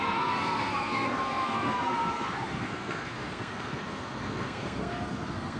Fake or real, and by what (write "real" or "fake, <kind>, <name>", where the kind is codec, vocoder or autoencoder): fake, codec, SNAC